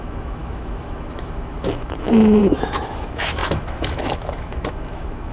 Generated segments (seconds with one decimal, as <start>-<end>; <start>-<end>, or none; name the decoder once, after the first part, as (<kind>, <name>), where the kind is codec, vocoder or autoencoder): 0.0-5.3 (autoencoder, DAC-VAE)